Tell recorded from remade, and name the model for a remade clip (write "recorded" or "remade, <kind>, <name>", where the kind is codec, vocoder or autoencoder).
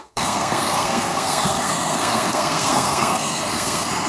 remade, codec, SNAC